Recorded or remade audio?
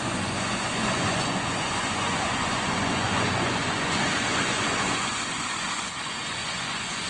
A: remade